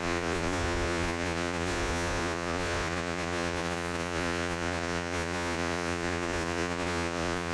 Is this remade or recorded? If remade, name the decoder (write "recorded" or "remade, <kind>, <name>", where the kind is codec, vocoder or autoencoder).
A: remade, vocoder, Vocos